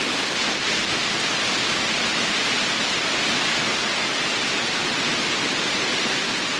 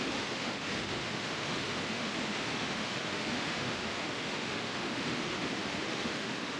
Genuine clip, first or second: first